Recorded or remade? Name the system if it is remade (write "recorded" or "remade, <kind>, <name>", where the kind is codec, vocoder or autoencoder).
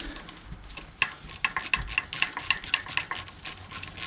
recorded